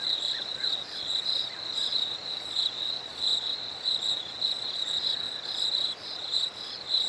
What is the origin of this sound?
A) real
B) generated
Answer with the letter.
B